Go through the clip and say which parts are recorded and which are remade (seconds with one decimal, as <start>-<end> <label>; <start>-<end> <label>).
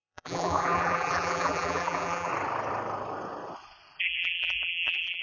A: 0.0-2.3 remade; 2.3-4.0 recorded; 4.0-5.2 remade